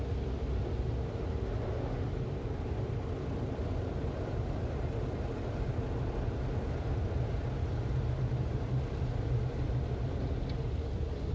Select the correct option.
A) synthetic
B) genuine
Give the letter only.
B